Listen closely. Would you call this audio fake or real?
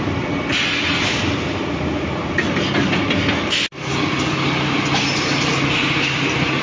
real